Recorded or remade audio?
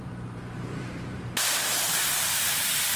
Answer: remade